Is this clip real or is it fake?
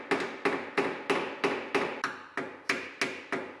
real